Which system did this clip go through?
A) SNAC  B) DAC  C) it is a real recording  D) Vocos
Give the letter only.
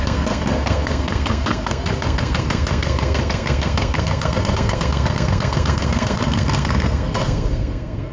A